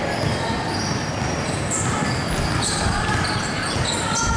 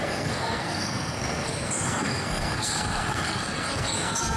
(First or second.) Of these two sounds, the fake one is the second